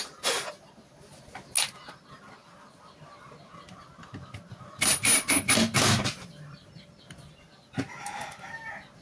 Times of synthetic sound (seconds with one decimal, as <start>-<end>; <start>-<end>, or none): none